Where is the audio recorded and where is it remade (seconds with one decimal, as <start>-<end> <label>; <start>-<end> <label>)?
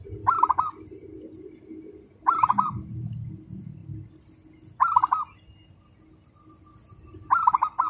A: 0.0-7.9 recorded